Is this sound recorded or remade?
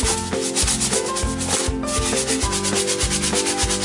recorded